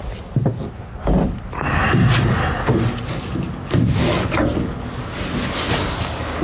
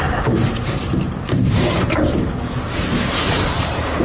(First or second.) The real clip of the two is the first